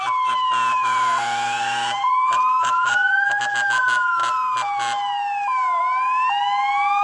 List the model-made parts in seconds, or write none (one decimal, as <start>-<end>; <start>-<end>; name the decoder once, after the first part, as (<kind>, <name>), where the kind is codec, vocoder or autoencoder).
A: 0.7-3.4 (vocoder, BigVGAN v2)